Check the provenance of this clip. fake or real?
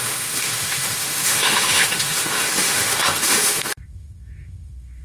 fake